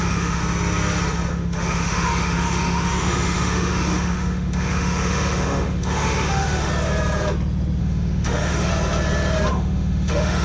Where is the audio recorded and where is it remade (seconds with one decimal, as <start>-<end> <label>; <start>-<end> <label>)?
0.0-0.4 remade; 0.4-1.3 recorded; 1.3-6.7 remade; 6.7-7.8 recorded; 7.8-8.7 remade; 8.7-9.5 recorded; 9.5-10.4 remade